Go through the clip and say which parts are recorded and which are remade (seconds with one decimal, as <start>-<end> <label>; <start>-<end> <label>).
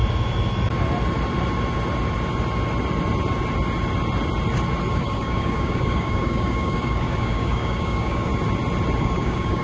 0.0-4.9 recorded; 4.9-8.3 remade; 8.3-9.0 recorded; 9.0-9.6 remade